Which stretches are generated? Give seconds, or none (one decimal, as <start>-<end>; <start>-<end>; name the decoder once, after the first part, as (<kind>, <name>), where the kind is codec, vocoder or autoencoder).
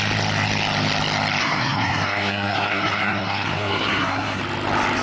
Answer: 1.4-4.4 (codec, SNAC)